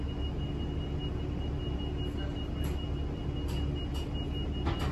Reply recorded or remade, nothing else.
recorded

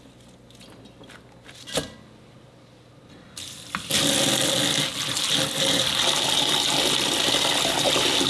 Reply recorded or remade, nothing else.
recorded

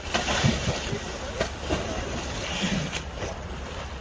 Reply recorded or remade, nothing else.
recorded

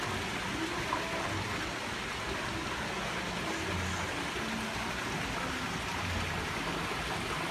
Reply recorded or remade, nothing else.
recorded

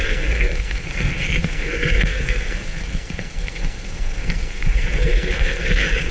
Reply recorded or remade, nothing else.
remade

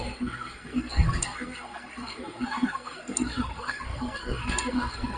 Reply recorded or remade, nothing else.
remade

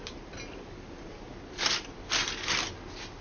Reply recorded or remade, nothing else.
recorded